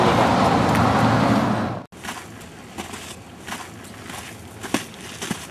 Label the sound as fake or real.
real